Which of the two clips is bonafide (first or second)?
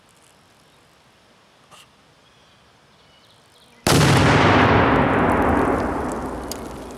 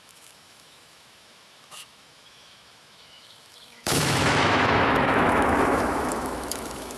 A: first